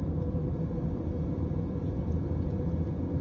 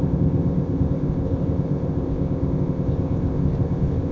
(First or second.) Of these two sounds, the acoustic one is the first